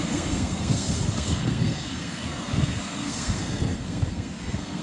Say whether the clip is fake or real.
fake